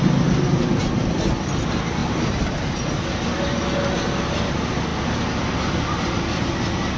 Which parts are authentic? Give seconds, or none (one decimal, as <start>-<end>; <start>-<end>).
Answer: 0.0-7.0